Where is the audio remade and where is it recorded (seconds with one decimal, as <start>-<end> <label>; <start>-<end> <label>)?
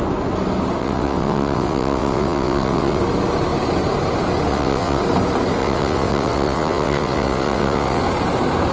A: 0.0-0.8 recorded; 0.8-3.0 remade; 3.0-4.5 recorded; 4.5-5.0 remade; 5.0-5.6 recorded; 5.6-8.0 remade; 8.0-8.7 recorded